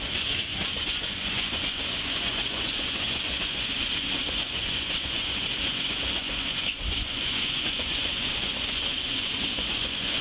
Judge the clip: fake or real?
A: fake